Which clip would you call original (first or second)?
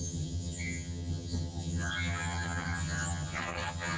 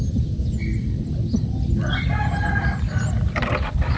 second